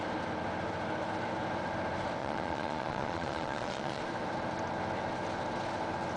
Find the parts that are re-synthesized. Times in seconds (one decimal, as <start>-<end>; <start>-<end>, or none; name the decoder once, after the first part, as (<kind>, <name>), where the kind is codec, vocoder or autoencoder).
2.2-4.0 (vocoder, Vocos)